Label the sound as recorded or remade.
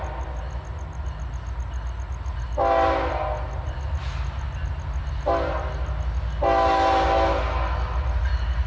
recorded